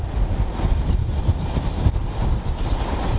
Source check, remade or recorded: recorded